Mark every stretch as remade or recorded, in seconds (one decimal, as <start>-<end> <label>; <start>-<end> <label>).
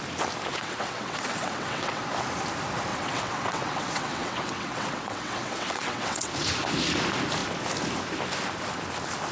0.0-0.5 recorded; 0.5-2.0 remade; 2.0-2.9 recorded; 2.9-6.3 remade; 6.3-9.3 recorded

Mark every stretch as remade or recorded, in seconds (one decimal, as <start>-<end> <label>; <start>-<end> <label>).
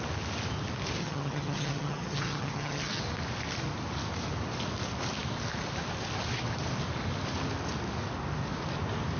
0.0-1.0 recorded; 1.0-3.0 remade; 3.0-9.2 recorded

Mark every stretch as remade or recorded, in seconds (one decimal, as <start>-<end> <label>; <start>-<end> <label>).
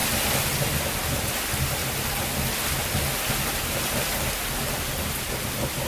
0.0-5.9 recorded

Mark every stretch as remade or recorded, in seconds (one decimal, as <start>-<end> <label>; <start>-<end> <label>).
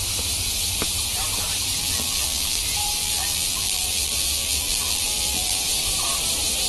0.0-1.8 recorded; 1.8-2.6 remade; 2.6-3.0 recorded; 3.0-5.6 remade; 5.6-6.7 recorded